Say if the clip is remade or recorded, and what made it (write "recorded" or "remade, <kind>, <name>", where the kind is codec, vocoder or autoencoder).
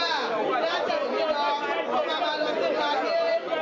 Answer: recorded